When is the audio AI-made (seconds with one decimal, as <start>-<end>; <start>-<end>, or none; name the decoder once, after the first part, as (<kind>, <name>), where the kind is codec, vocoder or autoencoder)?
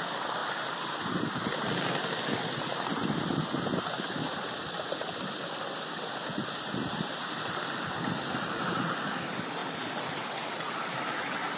none